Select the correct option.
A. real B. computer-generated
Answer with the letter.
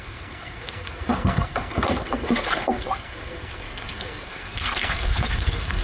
B